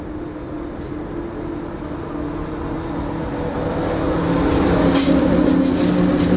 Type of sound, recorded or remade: recorded